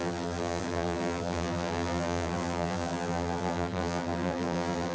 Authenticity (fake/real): fake